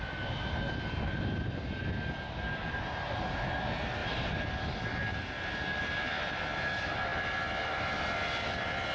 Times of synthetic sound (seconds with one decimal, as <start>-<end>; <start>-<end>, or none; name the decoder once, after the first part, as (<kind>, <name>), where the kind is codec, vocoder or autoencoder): 4.0-5.0 (vocoder, BigVGAN v2)